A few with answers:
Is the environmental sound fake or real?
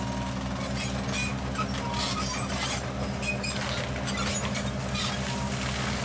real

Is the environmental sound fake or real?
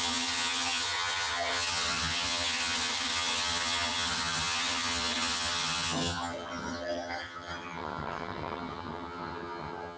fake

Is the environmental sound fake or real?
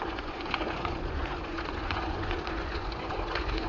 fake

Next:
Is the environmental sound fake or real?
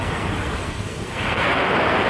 fake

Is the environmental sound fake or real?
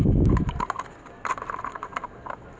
real